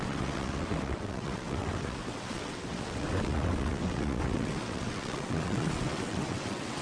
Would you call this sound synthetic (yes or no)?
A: yes